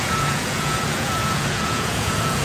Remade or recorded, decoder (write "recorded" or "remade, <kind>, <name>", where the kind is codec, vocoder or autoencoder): remade, vocoder, Vocos